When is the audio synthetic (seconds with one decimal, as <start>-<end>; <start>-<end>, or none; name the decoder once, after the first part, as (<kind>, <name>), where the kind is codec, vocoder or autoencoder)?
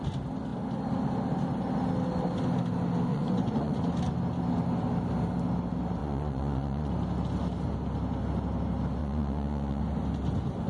3.1-3.8 (vocoder, Vocos); 6.0-6.9; 9.0-9.8